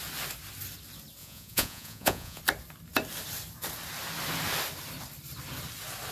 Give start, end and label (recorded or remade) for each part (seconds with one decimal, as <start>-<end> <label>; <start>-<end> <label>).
0.0-1.2 recorded; 1.2-2.4 remade; 2.4-6.1 recorded